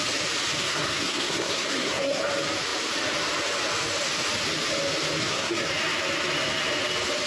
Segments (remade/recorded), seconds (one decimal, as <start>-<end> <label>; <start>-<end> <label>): 0.0-0.6 recorded; 0.6-2.2 remade; 2.2-5.2 recorded; 5.2-5.7 remade; 5.7-7.3 recorded